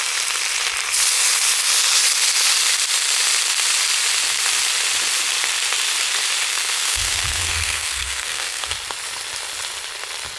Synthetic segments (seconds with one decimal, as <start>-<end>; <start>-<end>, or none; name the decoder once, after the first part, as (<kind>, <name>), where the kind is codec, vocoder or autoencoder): 6.5-8.7 (codec, SNAC)

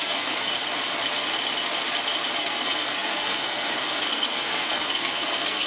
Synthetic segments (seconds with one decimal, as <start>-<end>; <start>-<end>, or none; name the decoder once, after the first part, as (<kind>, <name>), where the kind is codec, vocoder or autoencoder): 0.0-0.5 (codec, SNAC); 2.4-5.7